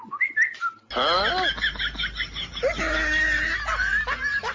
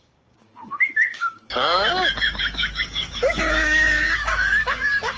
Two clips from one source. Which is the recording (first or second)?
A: first